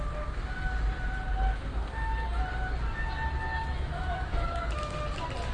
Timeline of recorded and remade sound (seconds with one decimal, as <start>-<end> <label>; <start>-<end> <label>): 0.0-3.6 recorded; 3.6-4.6 remade; 4.6-5.5 recorded

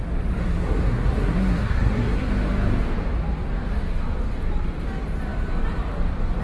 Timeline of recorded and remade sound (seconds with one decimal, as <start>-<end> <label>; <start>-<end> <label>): 0.0-0.4 recorded; 0.4-2.3 remade; 2.3-6.4 recorded

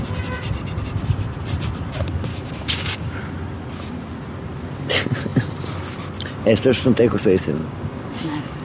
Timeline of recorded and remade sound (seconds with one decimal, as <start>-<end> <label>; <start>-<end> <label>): 0.0-2.3 recorded; 2.3-3.3 remade; 3.3-7.6 recorded; 7.6-8.6 remade

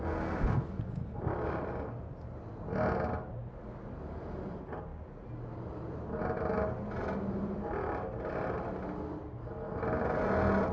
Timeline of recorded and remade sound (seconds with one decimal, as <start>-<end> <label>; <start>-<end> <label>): 0.0-10.7 recorded

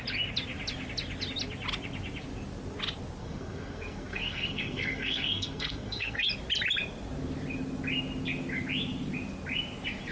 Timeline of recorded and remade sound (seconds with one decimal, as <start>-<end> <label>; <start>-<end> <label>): 0.0-3.2 recorded; 3.2-6.3 remade; 6.3-10.1 recorded

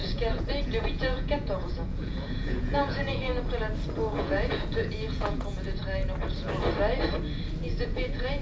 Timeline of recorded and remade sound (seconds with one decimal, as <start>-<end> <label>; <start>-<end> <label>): 0.0-3.3 remade; 3.3-4.2 recorded; 4.2-5.8 remade; 5.8-7.7 recorded; 7.7-8.4 remade

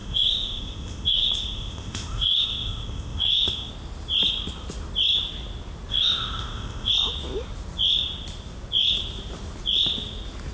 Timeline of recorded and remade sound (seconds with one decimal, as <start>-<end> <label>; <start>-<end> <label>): 0.0-3.7 remade; 3.7-5.9 recorded; 5.9-6.9 remade; 6.9-10.5 recorded